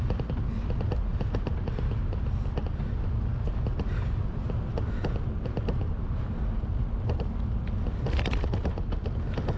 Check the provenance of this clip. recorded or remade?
recorded